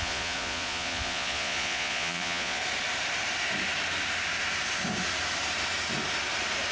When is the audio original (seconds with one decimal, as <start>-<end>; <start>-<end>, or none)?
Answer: 2.6-6.7